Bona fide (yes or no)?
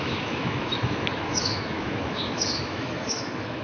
no